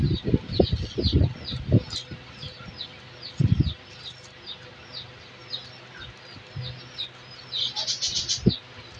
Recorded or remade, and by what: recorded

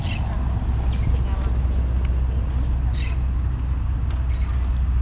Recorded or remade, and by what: recorded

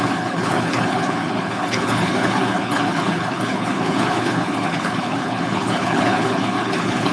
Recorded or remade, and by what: remade, codec, HILCodec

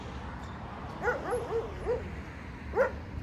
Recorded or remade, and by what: remade, vocoder, BigVGAN v2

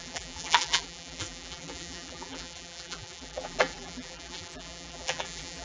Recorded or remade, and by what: remade, vocoder, BigVGAN v2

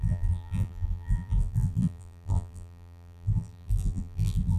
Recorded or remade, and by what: remade, vocoder, BigVGAN v2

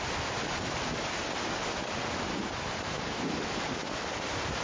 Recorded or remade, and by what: recorded